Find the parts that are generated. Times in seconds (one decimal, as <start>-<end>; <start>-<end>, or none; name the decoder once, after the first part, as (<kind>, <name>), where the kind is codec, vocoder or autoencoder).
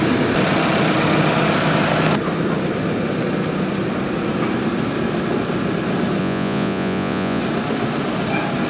6.2-7.4 (vocoder, Vocos)